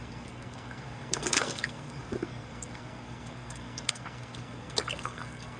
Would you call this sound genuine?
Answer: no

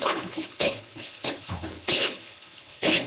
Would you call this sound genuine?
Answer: no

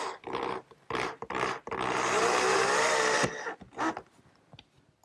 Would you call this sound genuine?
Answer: yes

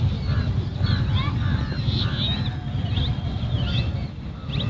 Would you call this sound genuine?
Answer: yes